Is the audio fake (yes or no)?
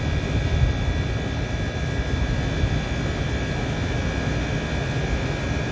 no